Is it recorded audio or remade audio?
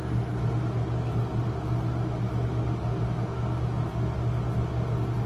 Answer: recorded